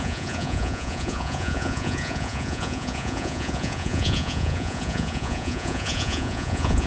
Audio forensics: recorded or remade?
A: remade